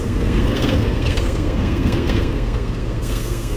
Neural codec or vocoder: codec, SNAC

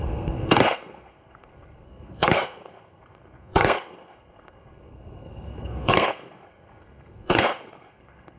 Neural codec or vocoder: codec, SNAC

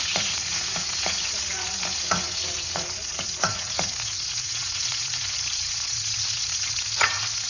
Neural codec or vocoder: vocoder, Vocos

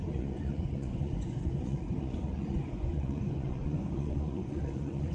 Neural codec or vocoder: vocoder, Vocos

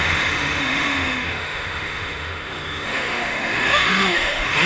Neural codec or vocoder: autoencoder, DAC-VAE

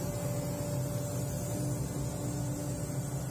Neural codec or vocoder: none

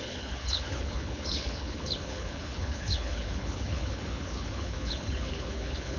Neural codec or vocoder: codec, HILCodec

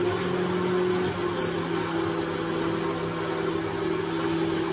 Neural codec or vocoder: none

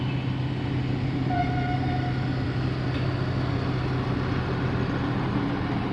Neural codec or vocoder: none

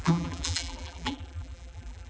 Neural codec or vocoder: vocoder, BigVGAN v2